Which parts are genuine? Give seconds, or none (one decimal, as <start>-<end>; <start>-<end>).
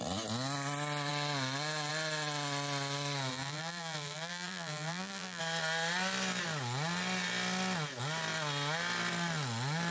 0.0-3.3; 5.4-9.9